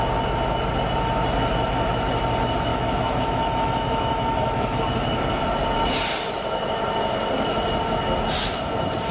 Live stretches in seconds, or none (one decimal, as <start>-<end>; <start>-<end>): 0.0-2.7; 4.8-9.1